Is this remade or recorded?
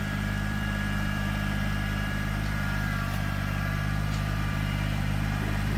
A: remade